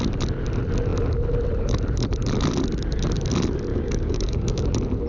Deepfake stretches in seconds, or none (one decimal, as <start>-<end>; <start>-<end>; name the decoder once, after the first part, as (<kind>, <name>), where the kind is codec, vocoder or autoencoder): 3.7-4.6 (codec, DAC)